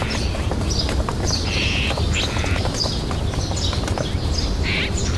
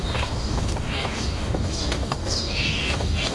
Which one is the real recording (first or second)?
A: first